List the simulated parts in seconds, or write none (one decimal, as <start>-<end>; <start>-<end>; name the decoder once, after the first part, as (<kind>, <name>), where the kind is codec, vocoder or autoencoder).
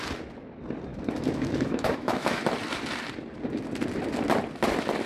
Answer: 0.9-2.4 (autoencoder, DAC-VAE)